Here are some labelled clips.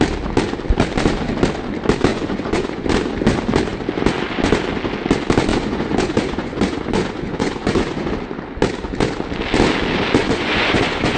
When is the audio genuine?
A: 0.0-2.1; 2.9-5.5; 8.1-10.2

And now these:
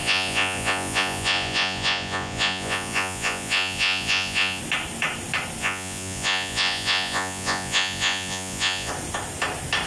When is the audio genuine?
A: 4.6-5.6; 8.9-9.9

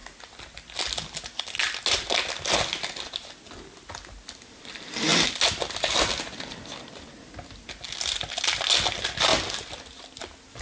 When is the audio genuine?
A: 0.0-10.6

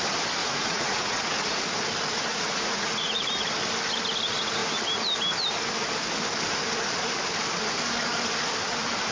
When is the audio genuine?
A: 0.0-0.4; 1.2-2.3; 3.3-9.1

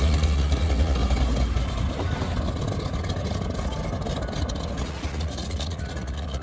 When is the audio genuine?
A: 1.0-4.8